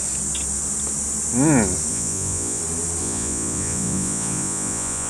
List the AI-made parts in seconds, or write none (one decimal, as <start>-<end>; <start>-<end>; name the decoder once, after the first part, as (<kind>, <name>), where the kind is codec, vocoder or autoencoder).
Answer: 1.9-2.6 (vocoder, Vocos); 3.0-5.1